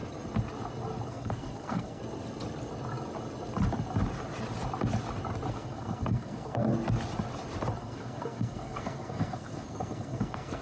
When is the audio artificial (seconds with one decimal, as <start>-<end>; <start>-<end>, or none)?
1.1-2.0; 5.5-6.7; 7.8-10.6